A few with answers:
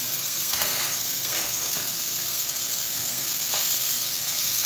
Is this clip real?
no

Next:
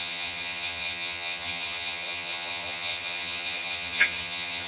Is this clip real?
no